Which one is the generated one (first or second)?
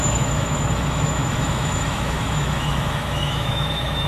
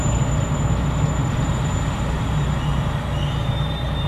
first